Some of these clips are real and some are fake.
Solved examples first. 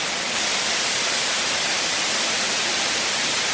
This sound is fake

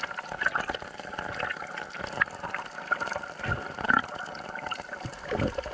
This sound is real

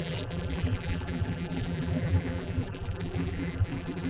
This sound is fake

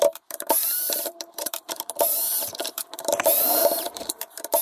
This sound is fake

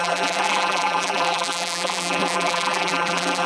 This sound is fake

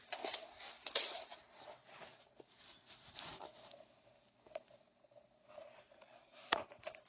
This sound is fake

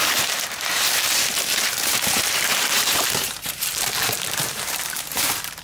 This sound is fake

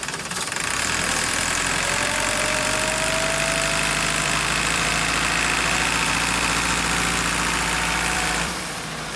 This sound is fake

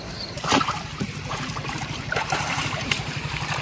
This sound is fake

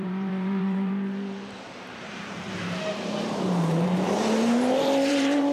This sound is fake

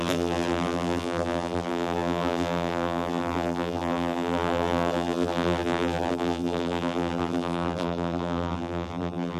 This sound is fake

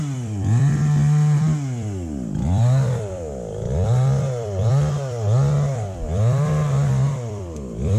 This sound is fake